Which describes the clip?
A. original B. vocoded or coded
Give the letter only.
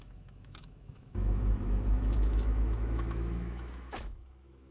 B